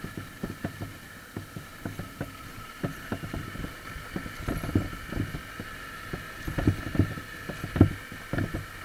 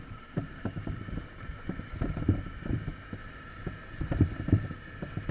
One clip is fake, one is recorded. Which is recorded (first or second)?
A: first